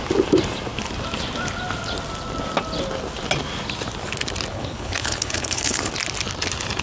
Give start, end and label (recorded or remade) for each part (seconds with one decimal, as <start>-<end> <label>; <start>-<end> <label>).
0.0-4.5 recorded; 4.5-5.9 remade; 5.9-6.8 recorded